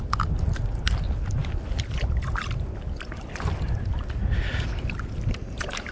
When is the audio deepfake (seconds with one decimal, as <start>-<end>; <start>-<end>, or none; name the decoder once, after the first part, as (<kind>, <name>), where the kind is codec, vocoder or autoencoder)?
none